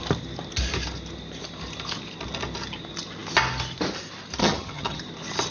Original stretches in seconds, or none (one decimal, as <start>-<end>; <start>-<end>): 0.0-4.4; 5.0-5.5